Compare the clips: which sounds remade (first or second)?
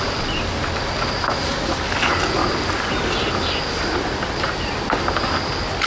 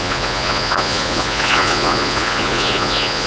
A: second